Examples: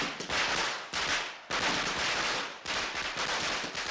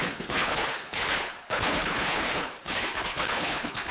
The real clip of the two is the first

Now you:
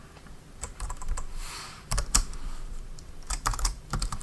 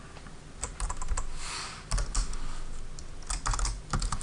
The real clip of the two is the second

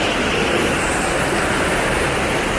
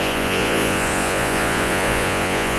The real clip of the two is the first